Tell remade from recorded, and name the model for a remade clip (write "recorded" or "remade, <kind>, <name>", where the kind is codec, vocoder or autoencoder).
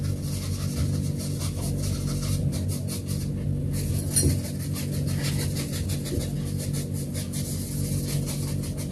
recorded